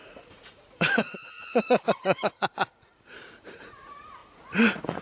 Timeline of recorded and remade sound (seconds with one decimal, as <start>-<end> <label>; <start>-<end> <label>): 0.0-5.0 remade